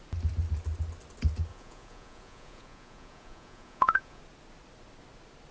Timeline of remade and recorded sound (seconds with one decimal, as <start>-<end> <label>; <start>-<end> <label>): 0.0-1.5 recorded; 1.5-4.2 remade; 4.2-5.5 recorded